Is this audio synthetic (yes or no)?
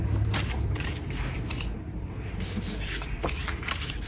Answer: yes